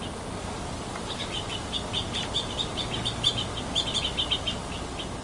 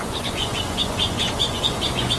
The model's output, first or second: second